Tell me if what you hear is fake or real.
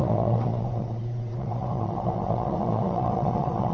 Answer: fake